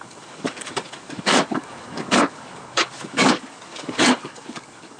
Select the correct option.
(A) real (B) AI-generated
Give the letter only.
B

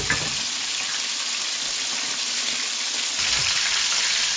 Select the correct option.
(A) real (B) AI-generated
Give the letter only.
A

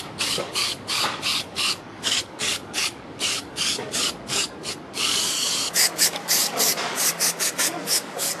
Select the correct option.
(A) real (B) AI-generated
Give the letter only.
B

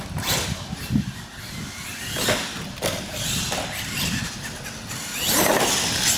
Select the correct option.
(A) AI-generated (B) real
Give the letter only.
B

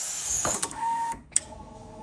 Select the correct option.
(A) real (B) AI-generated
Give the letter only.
B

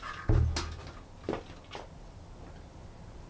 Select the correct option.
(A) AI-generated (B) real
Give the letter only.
B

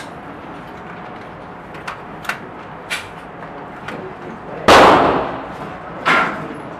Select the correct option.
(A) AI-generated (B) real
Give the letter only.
B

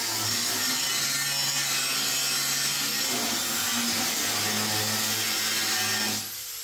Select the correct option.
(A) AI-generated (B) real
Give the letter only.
B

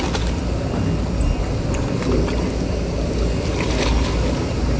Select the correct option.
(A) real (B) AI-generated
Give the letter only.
A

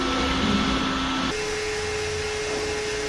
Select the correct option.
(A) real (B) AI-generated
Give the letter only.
A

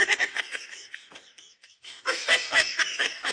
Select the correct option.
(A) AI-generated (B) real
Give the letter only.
A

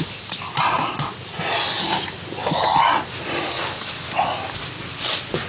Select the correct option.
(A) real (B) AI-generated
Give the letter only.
A